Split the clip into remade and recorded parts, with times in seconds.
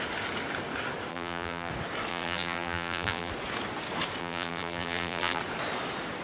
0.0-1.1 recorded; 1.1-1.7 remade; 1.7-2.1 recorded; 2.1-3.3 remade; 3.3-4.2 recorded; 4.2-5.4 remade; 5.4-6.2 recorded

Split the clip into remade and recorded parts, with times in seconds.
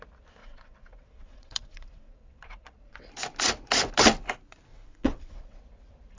0.0-0.4 recorded; 0.4-3.1 remade; 3.1-4.7 recorded; 4.7-5.6 remade; 5.6-6.2 recorded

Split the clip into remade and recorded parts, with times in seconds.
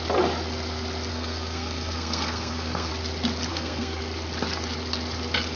0.0-1.1 recorded; 1.1-2.9 remade; 2.9-3.5 recorded; 3.5-4.0 remade; 4.0-5.6 recorded